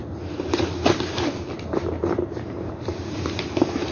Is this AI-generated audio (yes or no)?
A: yes